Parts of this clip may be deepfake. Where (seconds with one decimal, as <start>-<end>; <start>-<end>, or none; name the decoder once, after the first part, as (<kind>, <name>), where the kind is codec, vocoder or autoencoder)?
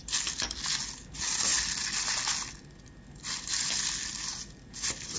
none